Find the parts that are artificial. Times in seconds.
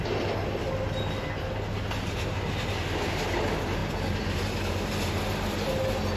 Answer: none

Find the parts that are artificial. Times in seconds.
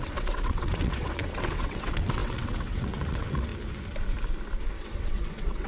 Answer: 0.0-3.5; 4.7-5.7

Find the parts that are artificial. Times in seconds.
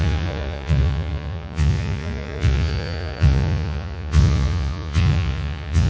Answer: 0.0-5.9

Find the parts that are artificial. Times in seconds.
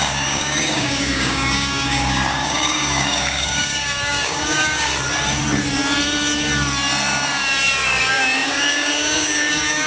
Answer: 0.0-4.9; 8.0-9.9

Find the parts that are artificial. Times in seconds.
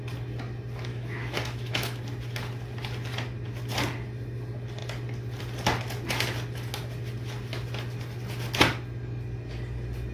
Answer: 0.9-2.0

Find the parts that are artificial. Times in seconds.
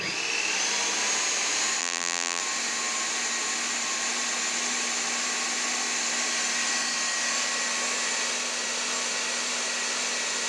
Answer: 1.8-2.4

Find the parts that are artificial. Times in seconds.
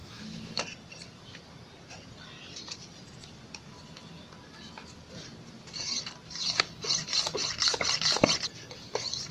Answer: 0.0-0.6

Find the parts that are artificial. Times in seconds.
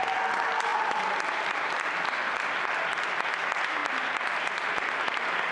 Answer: 0.7-3.0; 3.8-4.9